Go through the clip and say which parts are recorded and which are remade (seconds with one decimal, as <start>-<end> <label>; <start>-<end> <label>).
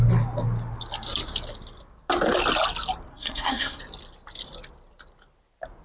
0.0-3.1 recorded; 3.1-3.8 remade; 3.8-5.8 recorded